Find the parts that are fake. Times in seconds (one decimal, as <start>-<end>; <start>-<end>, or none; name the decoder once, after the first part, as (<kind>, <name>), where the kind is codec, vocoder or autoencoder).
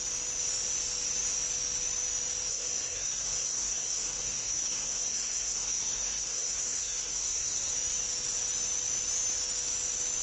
2.5-7.7 (codec, SNAC)